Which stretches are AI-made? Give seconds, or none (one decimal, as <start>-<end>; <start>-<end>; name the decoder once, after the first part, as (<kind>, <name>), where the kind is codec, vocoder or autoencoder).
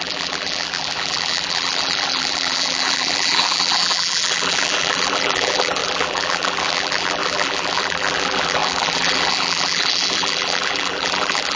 0.0-11.6 (vocoder, BigVGAN v2)